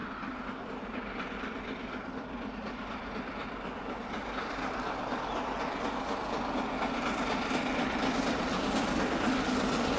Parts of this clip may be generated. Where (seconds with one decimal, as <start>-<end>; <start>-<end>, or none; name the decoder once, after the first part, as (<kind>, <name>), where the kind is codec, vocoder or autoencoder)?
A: 0.6-3.4 (vocoder, BigVGAN v2); 7.3-10.0